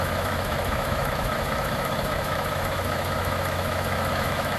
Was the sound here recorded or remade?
remade